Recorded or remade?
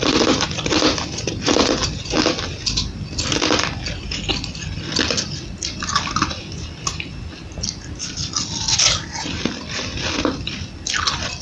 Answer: recorded